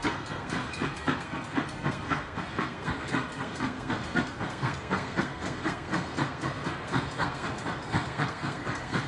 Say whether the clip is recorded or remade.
remade